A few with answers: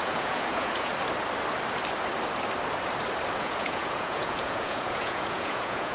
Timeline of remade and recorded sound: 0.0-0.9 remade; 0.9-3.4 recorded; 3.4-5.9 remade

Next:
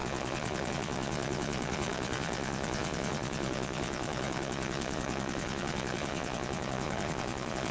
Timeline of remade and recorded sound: 0.0-7.7 remade

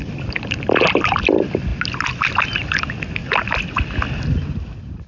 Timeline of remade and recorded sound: 0.0-5.1 recorded

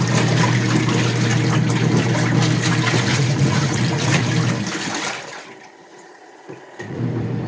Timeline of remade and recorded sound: 0.0-3.1 recorded; 3.1-4.3 remade; 4.3-5.9 recorded; 5.9-7.0 remade; 7.0-7.5 recorded

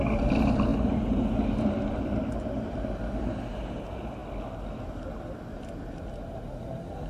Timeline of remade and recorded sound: 0.0-7.1 recorded

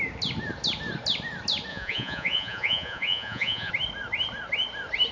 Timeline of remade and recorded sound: 0.0-1.7 recorded; 1.7-3.7 remade; 3.7-5.1 recorded

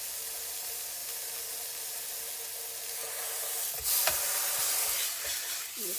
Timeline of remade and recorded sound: 0.0-6.0 recorded